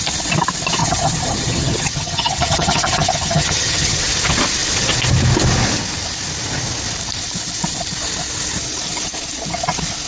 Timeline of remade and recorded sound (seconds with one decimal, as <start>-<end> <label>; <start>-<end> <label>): 0.0-0.8 recorded; 0.8-4.0 remade; 4.0-10.1 recorded